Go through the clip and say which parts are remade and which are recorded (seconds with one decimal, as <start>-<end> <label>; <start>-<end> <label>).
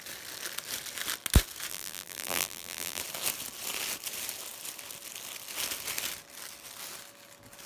0.0-1.7 recorded; 1.7-3.0 remade; 3.0-7.7 recorded